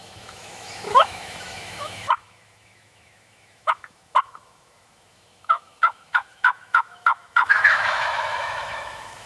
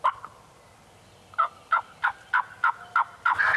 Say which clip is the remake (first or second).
first